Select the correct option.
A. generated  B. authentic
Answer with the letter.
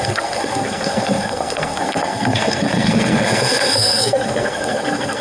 A